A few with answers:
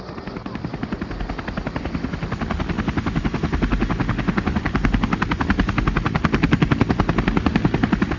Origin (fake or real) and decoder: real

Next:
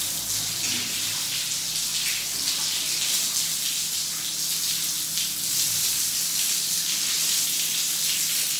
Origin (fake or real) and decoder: real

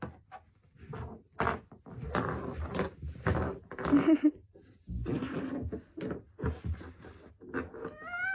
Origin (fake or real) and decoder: real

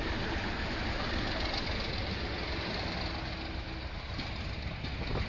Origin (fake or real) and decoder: real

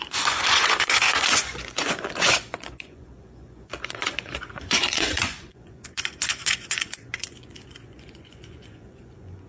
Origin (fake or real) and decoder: fake, vocoder, Vocos